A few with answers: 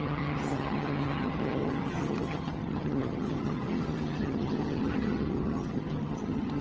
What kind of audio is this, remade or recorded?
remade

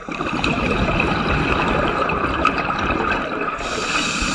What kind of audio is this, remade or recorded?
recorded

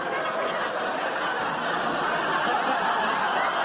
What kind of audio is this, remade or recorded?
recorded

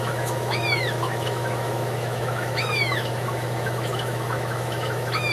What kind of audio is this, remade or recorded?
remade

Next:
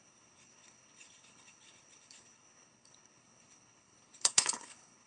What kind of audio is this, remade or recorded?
remade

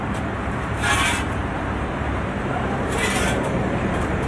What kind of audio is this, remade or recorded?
remade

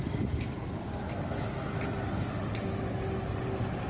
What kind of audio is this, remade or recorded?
recorded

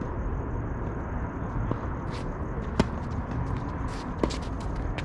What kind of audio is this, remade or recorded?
recorded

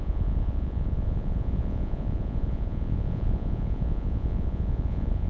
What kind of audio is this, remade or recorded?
remade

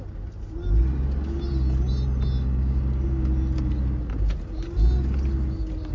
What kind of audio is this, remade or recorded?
recorded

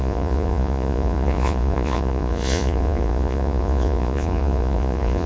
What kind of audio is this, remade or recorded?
remade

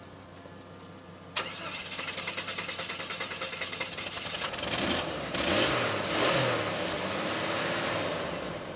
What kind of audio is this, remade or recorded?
recorded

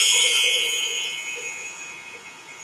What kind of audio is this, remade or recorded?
remade